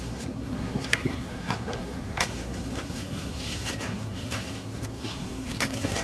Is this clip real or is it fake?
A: fake